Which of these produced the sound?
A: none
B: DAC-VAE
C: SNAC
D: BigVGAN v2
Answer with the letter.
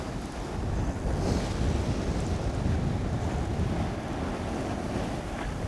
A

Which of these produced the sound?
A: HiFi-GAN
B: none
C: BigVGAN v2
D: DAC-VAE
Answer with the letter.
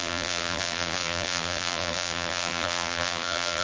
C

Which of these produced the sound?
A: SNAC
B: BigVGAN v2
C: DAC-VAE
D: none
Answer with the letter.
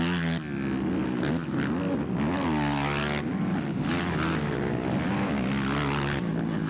D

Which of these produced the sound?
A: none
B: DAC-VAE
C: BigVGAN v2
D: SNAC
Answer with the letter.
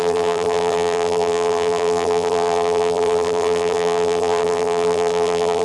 C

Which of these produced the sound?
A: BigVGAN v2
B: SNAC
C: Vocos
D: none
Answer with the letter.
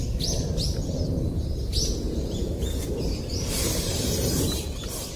A